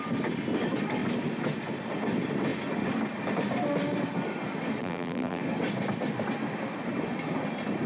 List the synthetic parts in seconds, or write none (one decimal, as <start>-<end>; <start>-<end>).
4.8-5.4